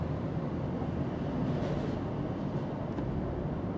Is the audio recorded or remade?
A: recorded